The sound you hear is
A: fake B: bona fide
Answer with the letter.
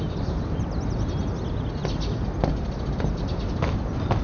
B